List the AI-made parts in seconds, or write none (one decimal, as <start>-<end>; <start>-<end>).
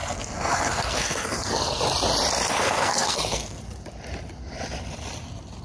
0.0-1.8; 2.6-3.6